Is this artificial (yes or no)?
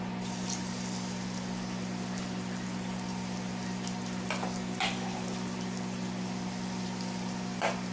no